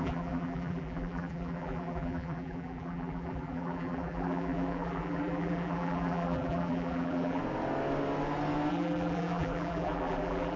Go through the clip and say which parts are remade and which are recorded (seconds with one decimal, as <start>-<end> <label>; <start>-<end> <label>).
0.0-7.4 remade; 7.4-8.7 recorded; 8.7-10.6 remade

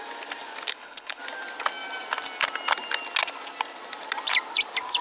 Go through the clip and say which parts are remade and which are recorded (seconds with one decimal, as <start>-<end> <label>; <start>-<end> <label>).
0.0-0.7 recorded; 0.7-1.2 remade; 1.2-5.0 recorded

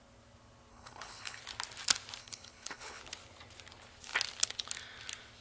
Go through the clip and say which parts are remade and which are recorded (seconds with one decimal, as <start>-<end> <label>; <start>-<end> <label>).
0.0-0.7 recorded; 0.7-1.4 remade; 1.4-2.2 recorded; 2.2-3.0 remade; 3.0-5.4 recorded

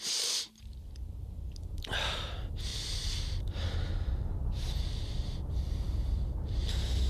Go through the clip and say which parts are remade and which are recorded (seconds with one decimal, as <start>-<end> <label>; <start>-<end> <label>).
0.0-2.7 recorded; 2.7-3.4 remade; 3.4-7.1 recorded

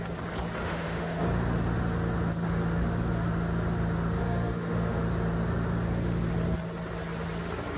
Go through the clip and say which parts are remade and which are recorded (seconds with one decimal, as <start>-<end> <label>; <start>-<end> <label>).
0.0-0.6 recorded; 0.6-1.2 remade; 1.2-4.2 recorded; 4.2-5.0 remade; 5.0-7.8 recorded

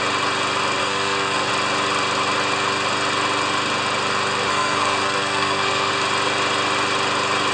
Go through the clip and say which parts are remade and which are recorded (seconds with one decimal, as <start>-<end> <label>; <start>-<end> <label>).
0.0-0.8 recorded; 0.8-1.5 remade; 1.5-4.5 recorded; 4.5-5.9 remade; 5.9-7.5 recorded

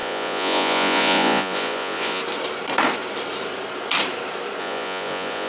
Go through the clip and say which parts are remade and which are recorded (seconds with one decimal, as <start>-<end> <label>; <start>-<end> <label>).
0.0-2.2 remade; 2.2-4.6 recorded; 4.6-5.5 remade

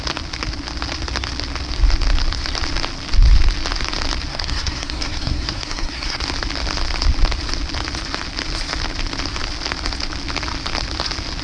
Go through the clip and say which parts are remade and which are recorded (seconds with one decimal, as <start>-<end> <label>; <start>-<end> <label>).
0.0-4.3 recorded; 4.3-6.2 remade; 6.2-11.4 recorded